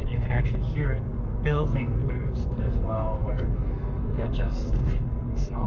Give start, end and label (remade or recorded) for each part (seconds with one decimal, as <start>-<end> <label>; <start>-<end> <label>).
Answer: 0.0-5.7 remade